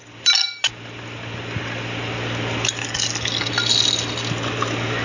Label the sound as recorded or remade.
recorded